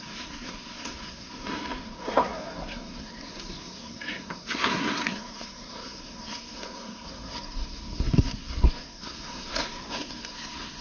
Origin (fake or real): fake